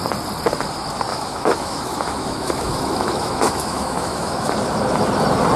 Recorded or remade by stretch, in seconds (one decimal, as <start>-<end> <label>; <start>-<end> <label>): 0.0-1.1 recorded; 1.1-4.5 remade; 4.5-5.6 recorded